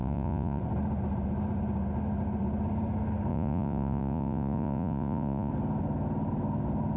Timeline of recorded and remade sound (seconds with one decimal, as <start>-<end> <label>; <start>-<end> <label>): 0.0-0.6 remade; 0.6-3.3 recorded; 3.3-5.5 remade; 5.5-7.0 recorded